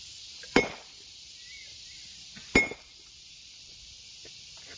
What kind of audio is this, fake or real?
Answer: real